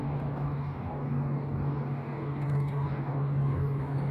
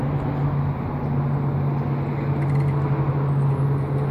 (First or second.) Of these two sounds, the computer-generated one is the first